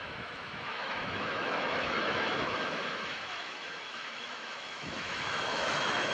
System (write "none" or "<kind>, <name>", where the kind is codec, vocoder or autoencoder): autoencoder, DAC-VAE